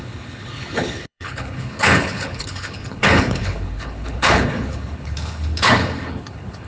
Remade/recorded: remade